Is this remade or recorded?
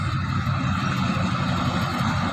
recorded